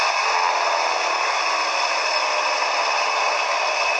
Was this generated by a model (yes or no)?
no